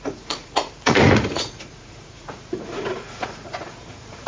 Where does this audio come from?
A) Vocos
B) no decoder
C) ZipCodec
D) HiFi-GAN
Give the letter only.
A